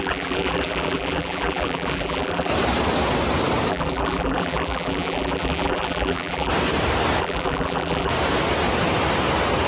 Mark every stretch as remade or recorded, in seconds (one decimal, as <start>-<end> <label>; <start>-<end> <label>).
0.0-2.5 remade; 2.5-3.7 recorded; 3.7-6.5 remade; 6.5-7.2 recorded; 7.2-8.1 remade; 8.1-9.7 recorded